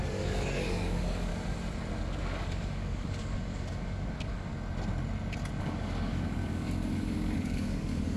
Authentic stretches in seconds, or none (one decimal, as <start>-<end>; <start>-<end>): 1.3-2.2; 4.5-5.6